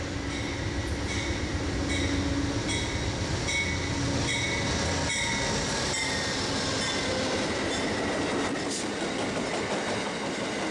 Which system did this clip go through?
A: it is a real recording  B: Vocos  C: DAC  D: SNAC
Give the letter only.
A